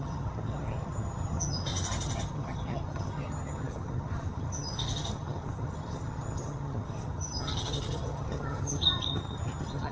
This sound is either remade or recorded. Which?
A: remade